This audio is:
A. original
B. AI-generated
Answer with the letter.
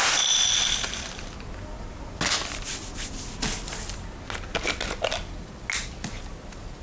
A